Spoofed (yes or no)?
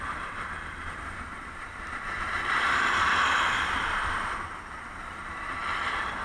yes